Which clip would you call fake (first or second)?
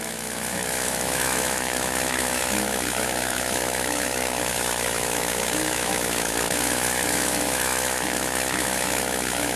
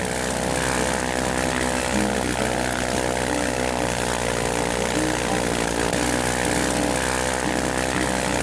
first